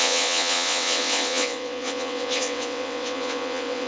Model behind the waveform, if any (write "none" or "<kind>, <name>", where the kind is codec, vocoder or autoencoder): vocoder, WaveNeXt